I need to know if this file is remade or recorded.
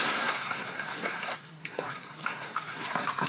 remade